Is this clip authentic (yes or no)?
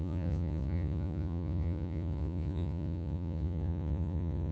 no